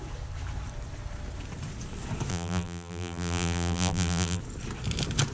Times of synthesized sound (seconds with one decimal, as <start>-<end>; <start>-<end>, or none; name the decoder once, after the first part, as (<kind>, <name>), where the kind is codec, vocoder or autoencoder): 2.3-4.4 (vocoder, BigVGAN v2)